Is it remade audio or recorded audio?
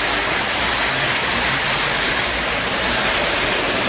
recorded